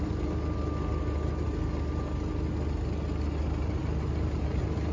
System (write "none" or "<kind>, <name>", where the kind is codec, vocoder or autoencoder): none